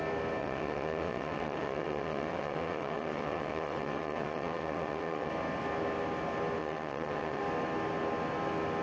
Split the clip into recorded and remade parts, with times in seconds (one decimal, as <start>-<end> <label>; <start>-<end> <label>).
0.0-0.4 recorded; 0.4-5.3 remade; 5.3-6.6 recorded; 6.6-7.4 remade; 7.4-8.8 recorded